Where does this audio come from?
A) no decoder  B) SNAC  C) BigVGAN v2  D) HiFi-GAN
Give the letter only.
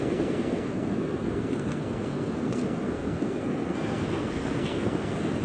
B